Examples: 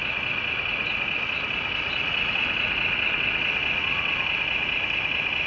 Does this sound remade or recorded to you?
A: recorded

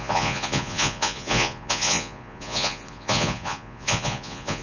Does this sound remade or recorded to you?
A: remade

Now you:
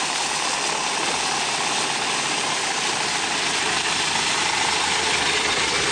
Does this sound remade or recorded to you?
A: recorded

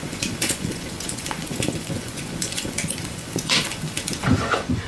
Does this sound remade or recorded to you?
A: remade